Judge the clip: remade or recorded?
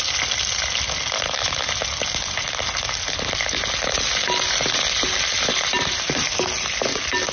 recorded